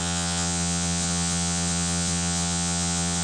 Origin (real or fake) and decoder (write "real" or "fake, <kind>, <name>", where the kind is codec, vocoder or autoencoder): fake, vocoder, WaveNeXt